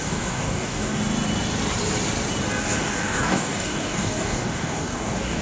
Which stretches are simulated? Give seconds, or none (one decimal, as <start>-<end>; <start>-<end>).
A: 0.0-1.0; 2.6-5.4

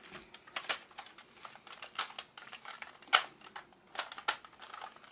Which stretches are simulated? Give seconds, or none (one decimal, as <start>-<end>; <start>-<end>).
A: 2.4-2.9

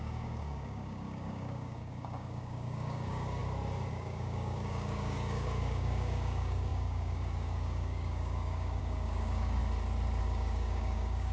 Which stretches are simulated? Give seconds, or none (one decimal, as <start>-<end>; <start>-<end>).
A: 0.0-3.4; 3.9-9.6; 10.2-11.3

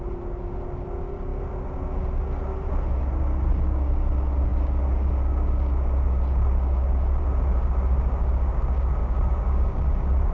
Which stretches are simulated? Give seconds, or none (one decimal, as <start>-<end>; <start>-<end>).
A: 9.0-9.8

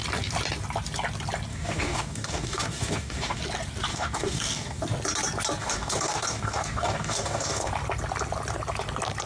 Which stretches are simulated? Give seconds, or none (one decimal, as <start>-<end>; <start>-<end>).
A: 1.5-3.4; 3.9-4.8; 5.6-7.7

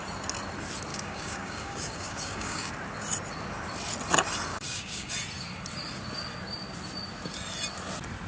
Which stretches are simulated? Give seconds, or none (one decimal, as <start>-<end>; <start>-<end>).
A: 0.9-2.7; 4.5-5.1

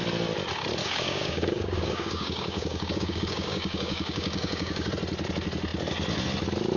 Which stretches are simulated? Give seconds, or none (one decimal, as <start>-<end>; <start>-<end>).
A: 0.8-4.9